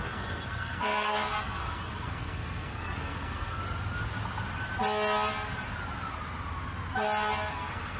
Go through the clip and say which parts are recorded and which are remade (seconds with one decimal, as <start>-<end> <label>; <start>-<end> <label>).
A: 0.0-3.6 remade; 3.6-7.5 recorded; 7.5-8.0 remade